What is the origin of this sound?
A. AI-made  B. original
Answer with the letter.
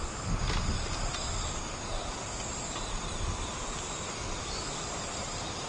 B